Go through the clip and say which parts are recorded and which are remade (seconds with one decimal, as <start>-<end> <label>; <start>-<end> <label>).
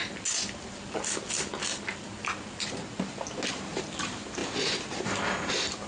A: 0.0-3.5 recorded; 3.5-4.4 remade; 4.4-5.0 recorded; 5.0-5.9 remade